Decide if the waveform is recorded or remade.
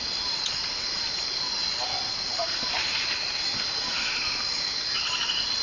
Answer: recorded